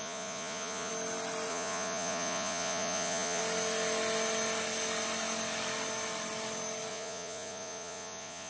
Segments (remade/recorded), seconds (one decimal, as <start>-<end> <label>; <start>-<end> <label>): 0.0-0.9 remade; 0.9-1.5 recorded; 1.5-3.4 remade; 3.4-6.9 recorded; 6.9-8.5 remade